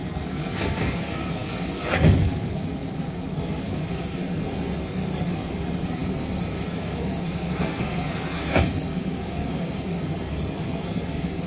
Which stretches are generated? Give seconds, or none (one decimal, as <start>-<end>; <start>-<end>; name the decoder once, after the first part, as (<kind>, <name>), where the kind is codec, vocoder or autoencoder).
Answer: 0.0-11.5 (codec, SNAC)